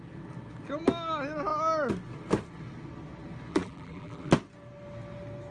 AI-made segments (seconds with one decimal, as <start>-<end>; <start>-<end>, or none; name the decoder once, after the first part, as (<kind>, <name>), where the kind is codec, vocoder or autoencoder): 3.5-4.3 (vocoder, BigVGAN v2)